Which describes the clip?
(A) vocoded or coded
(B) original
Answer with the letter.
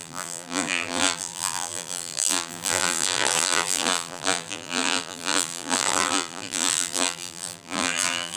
A